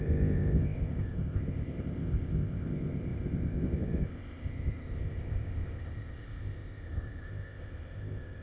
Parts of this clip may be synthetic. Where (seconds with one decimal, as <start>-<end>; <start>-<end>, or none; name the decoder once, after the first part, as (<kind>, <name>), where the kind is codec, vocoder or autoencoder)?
0.0-8.4 (codec, ZipCodec)